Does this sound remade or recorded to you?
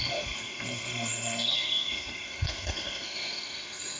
remade